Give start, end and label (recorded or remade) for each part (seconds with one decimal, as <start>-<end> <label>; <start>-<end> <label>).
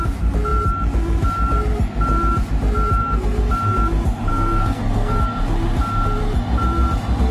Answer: 0.0-3.0 recorded; 3.0-3.5 remade; 3.5-4.3 recorded; 4.3-5.2 remade; 5.2-7.3 recorded